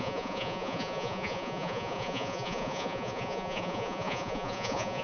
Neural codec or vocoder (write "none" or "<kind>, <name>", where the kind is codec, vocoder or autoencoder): vocoder, Vocos